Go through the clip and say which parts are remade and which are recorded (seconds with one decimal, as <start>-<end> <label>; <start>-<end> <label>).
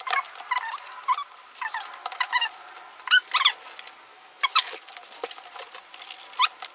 0.0-2.0 recorded; 2.0-2.5 remade; 2.5-4.1 recorded; 4.1-4.8 remade; 4.8-6.7 recorded